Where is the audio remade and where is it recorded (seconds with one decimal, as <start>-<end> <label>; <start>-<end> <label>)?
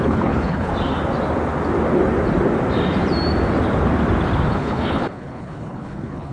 0.0-0.7 remade; 0.7-4.5 recorded; 4.5-6.3 remade